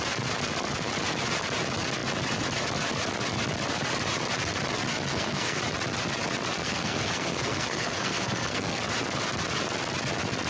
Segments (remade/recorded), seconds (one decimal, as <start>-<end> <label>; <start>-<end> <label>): 0.0-5.1 recorded; 5.1-5.6 remade; 5.6-6.6 recorded; 6.6-8.8 remade; 8.8-10.5 recorded